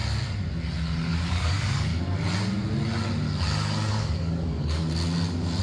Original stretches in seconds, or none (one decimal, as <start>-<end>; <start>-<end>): 0.0-1.1; 1.9-3.9; 4.8-5.6